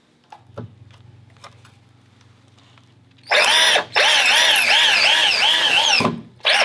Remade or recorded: recorded